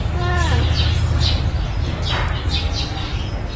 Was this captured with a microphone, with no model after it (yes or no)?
yes